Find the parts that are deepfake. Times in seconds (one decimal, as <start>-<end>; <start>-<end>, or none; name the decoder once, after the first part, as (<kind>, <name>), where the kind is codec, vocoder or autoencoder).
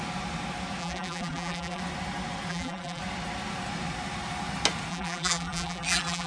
0.8-1.8 (vocoder, BigVGAN v2); 2.5-3.0; 4.9-6.3